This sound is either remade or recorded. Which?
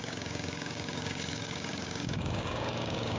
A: remade